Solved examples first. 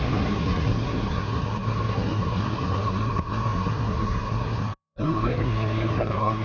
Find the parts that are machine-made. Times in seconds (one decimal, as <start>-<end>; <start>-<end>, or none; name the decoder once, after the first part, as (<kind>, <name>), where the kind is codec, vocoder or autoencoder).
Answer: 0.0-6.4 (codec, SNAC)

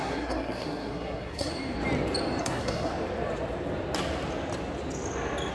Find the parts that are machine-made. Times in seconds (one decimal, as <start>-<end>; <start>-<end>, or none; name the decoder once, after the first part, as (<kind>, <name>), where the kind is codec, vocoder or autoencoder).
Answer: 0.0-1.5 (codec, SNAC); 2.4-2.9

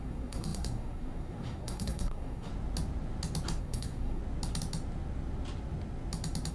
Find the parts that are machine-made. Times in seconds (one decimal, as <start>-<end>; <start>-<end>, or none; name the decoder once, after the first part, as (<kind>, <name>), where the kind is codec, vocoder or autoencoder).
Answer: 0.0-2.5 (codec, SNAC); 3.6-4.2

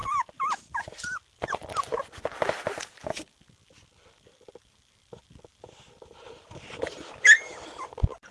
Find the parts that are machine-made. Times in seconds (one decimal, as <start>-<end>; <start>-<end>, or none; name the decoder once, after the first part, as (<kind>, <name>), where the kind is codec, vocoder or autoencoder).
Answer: 0.0-1.9 (vocoder, BigVGAN v2); 4.3-8.3